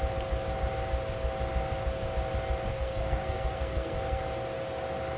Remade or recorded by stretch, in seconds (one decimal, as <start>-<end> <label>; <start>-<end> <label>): 0.0-2.7 recorded; 2.7-4.2 remade; 4.2-5.2 recorded